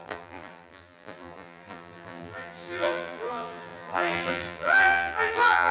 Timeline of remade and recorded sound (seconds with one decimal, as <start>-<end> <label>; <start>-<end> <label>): 0.0-5.7 remade